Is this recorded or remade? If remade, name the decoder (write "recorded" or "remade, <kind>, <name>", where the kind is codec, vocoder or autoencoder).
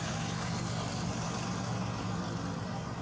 recorded